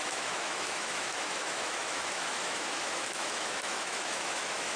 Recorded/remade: remade